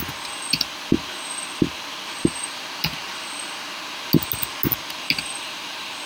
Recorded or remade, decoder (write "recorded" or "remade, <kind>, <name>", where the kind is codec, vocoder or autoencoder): recorded